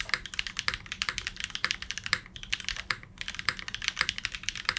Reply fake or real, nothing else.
real